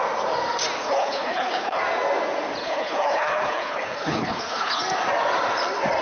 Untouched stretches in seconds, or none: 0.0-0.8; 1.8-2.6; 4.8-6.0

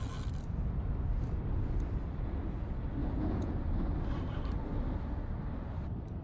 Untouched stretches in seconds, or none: 0.0-3.0; 3.5-6.2

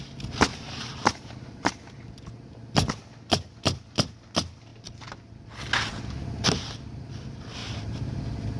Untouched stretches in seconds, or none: 0.0-0.5; 1.7-7.6; 8.2-8.6

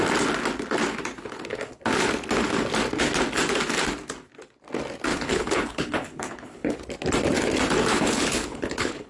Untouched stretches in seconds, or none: 0.0-1.2; 1.8-5.1; 6.8-7.9

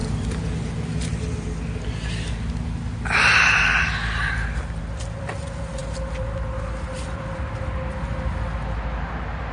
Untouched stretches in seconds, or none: 0.0-9.5

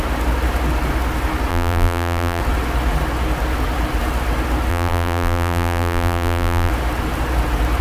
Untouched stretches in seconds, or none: 0.0-1.5; 2.4-4.7; 6.7-7.8